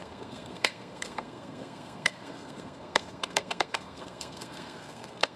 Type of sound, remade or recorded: remade